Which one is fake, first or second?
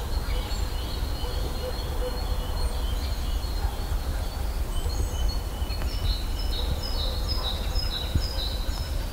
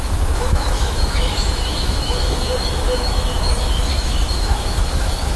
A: second